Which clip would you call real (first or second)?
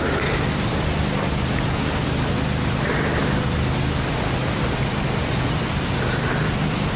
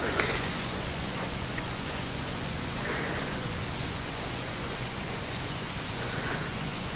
first